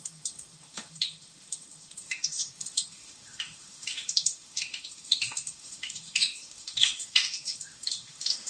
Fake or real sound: fake